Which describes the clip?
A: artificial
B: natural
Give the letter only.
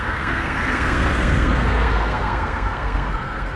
A